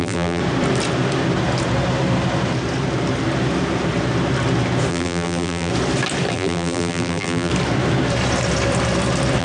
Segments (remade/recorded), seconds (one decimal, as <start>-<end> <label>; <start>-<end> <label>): 0.0-0.4 remade; 0.4-4.9 recorded; 4.9-5.7 remade; 5.7-6.3 recorded; 6.3-7.5 remade; 7.5-9.4 recorded

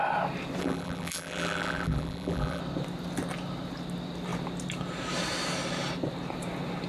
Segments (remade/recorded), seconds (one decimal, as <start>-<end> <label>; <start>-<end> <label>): 0.0-0.6 recorded; 0.6-2.6 remade; 2.6-6.9 recorded

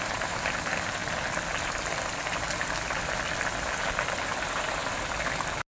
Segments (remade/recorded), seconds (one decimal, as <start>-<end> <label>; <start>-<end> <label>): 0.0-1.0 remade; 1.0-4.1 recorded; 4.1-4.8 remade; 4.8-5.7 recorded

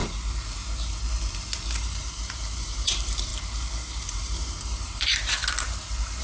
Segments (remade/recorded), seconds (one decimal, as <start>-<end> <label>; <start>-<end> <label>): 0.0-1.8 recorded; 1.8-3.3 remade; 3.3-4.0 recorded; 4.0-5.4 remade; 5.4-6.2 recorded

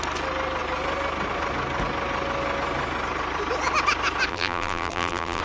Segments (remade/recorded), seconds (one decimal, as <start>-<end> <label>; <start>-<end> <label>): 0.0-4.3 recorded; 4.3-5.4 remade